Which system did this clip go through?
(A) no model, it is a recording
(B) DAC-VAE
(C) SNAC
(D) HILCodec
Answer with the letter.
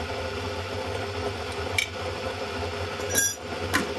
A